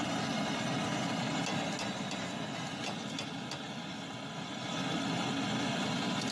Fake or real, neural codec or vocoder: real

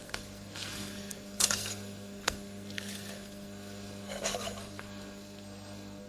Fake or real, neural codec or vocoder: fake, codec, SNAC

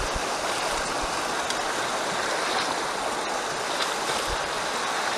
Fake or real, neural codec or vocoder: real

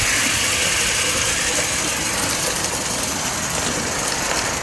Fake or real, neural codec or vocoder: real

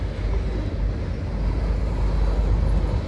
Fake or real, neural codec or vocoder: real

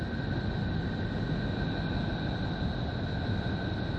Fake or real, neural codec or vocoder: real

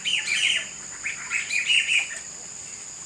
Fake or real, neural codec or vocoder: real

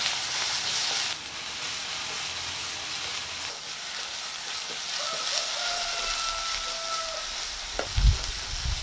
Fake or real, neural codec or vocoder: real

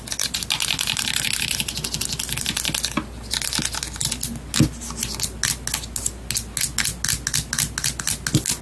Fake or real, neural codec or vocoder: real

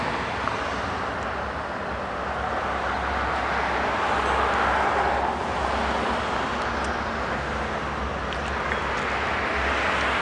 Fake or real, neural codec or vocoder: real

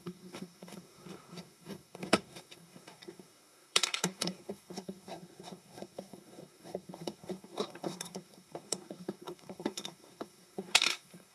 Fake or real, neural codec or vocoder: fake, codec, SNAC